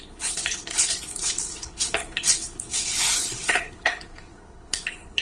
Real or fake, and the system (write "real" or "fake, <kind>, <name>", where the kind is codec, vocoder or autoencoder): fake, codec, HILCodec